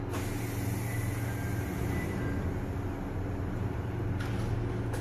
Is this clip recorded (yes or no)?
yes